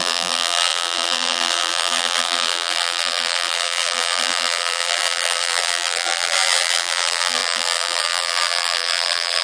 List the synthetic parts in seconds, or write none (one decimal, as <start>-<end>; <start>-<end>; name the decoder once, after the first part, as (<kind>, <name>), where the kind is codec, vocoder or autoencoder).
0.0-9.4 (vocoder, BigVGAN v2)